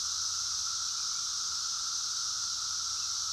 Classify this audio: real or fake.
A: real